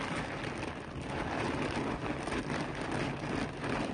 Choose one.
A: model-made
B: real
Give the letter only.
B